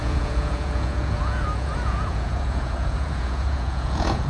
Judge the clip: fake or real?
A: fake